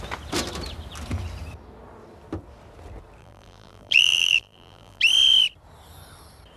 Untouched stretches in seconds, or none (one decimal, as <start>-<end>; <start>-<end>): 0.0-3.2; 5.0-6.6